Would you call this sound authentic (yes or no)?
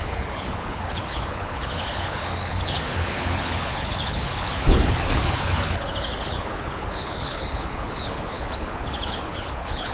no